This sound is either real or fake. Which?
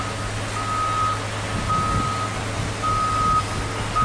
real